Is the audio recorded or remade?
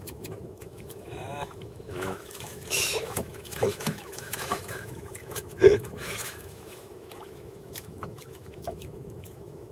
remade